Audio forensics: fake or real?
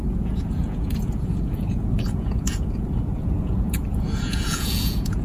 fake